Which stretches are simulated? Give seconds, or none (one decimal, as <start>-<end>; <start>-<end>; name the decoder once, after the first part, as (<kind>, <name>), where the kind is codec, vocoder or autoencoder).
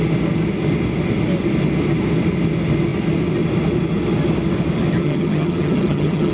5.0-6.3 (vocoder, HiFi-GAN)